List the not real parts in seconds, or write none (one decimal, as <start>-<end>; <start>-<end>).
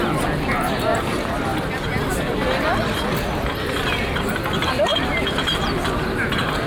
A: none